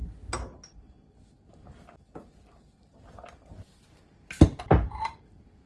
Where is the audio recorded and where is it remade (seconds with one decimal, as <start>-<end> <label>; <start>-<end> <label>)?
0.0-5.7 recorded